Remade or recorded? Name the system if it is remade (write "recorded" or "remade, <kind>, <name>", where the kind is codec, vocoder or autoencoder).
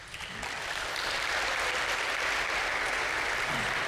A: recorded